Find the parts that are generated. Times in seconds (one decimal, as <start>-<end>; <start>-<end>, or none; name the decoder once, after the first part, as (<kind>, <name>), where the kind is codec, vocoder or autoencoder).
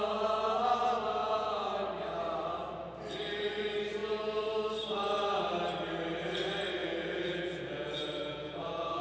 1.2-1.7 (vocoder, Vocos); 6.8-9.0